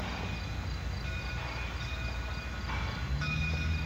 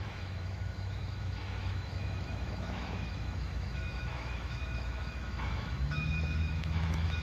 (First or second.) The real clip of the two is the first